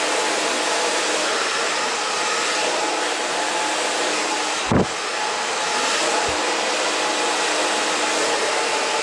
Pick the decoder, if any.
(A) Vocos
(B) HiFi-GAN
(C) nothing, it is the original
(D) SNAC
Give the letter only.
C